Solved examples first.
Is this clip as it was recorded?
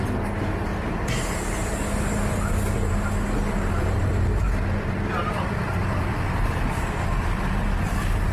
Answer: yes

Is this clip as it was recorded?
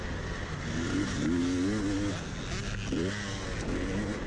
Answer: yes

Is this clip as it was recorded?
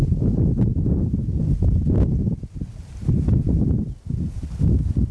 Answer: yes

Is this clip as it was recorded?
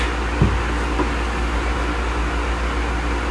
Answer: yes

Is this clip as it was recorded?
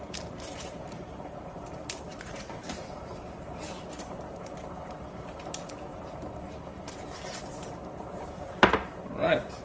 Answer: no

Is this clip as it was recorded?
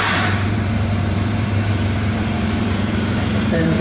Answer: no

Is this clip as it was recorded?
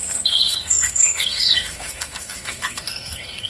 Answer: no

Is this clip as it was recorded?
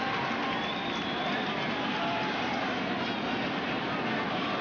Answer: yes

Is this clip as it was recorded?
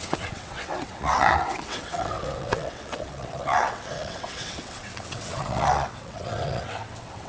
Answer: no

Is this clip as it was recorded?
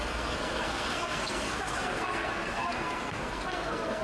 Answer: no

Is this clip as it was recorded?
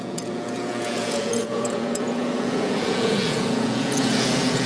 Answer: no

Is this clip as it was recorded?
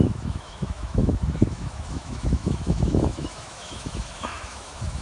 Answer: no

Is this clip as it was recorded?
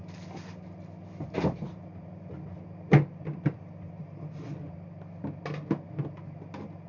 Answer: yes